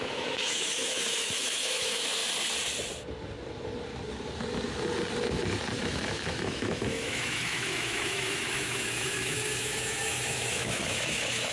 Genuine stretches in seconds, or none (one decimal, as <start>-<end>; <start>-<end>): 2.2-5.8